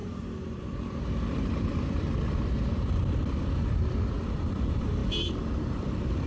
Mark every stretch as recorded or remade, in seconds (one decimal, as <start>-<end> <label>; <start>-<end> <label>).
0.0-2.1 remade; 2.1-4.2 recorded; 4.2-6.3 remade